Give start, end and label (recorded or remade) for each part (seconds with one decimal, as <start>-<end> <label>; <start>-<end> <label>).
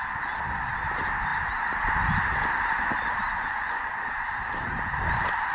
0.0-3.2 recorded; 3.2-4.1 remade; 4.1-5.5 recorded